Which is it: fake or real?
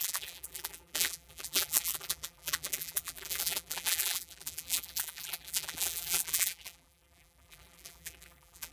fake